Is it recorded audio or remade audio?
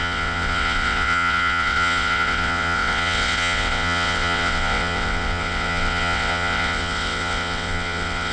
remade